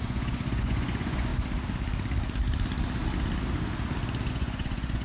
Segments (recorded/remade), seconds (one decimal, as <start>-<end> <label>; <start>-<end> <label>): 0.0-1.3 remade; 1.3-4.3 recorded; 4.3-5.0 remade